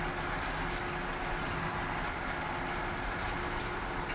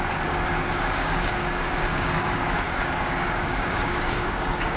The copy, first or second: second